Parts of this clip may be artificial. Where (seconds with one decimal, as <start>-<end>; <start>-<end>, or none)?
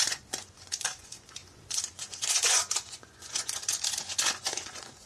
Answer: 0.0-5.1